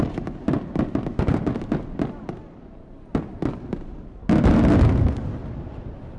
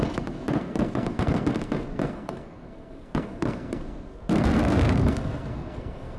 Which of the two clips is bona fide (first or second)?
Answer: first